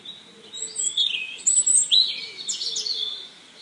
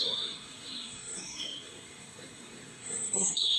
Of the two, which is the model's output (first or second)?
second